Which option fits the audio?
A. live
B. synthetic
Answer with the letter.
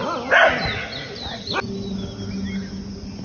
A